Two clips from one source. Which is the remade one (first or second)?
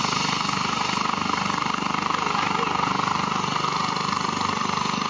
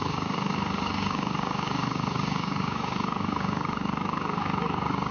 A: second